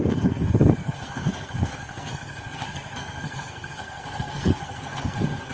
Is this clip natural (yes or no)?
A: no